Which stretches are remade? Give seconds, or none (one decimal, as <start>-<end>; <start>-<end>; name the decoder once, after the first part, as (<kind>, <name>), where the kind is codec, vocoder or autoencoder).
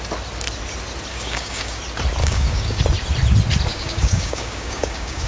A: 1.1-1.8 (codec, DAC); 2.2-2.8; 3.7-5.3